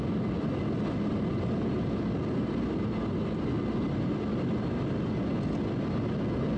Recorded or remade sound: recorded